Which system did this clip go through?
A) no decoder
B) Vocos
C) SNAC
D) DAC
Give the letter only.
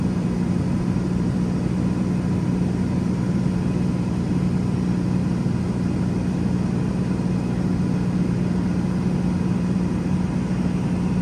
A